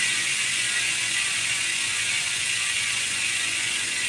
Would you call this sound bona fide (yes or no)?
no